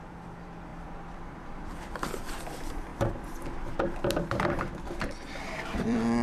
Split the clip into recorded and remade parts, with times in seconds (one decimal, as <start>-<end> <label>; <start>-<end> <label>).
0.0-6.2 remade